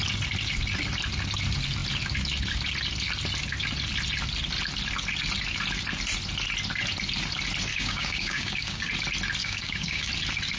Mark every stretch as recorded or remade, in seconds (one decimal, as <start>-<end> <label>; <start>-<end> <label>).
0.0-7.7 recorded; 7.7-8.9 remade; 8.9-9.4 recorded; 9.4-10.1 remade; 10.1-10.6 recorded